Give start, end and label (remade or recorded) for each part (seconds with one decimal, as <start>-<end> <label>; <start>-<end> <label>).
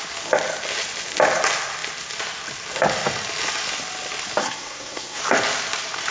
0.0-4.4 recorded; 4.4-5.2 remade; 5.2-6.1 recorded